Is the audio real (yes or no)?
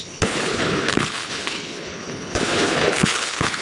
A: no